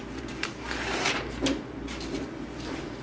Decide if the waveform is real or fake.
fake